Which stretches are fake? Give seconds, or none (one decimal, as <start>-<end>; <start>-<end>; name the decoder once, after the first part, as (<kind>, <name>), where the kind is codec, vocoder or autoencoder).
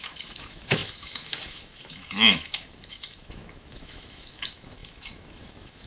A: 0.0-5.9 (autoencoder, DAC-VAE)